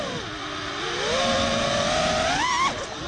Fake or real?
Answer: real